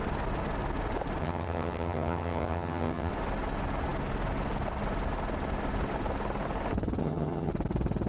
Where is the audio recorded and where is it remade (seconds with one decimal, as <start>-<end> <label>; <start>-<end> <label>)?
0.0-1.2 recorded; 1.2-3.1 remade; 3.1-7.0 recorded; 7.0-7.5 remade; 7.5-8.1 recorded